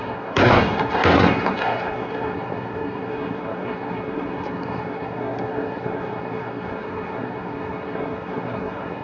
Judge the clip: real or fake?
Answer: fake